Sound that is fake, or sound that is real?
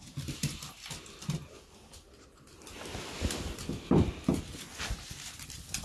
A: real